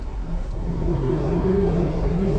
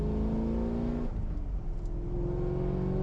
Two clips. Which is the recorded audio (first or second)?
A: second